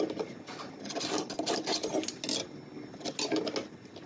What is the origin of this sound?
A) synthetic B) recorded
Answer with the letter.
B